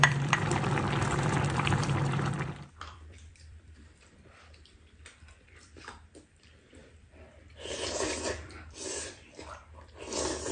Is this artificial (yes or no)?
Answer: yes